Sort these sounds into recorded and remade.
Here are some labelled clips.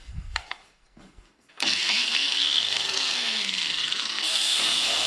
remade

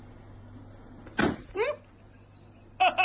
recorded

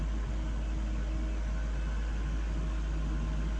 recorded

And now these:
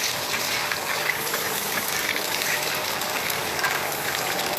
remade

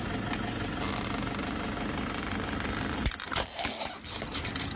recorded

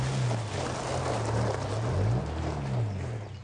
recorded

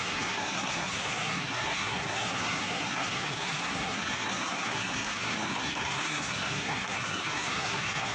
remade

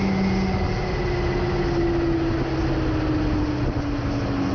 recorded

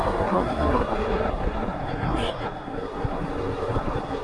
remade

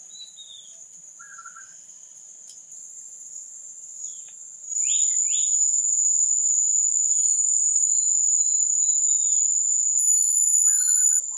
recorded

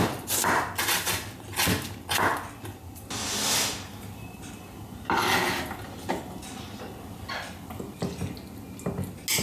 recorded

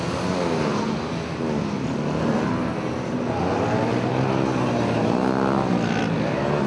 recorded